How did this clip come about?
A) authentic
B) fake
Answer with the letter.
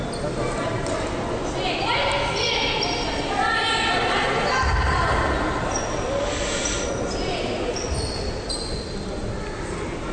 A